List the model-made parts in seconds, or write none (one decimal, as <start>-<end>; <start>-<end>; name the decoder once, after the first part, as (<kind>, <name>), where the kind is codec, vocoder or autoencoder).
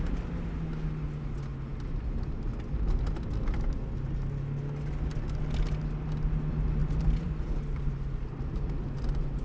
6.8-8.7 (vocoder, BigVGAN v2)